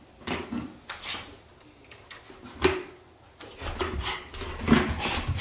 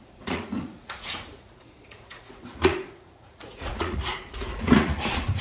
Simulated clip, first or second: second